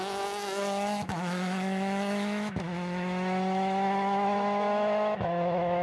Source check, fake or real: fake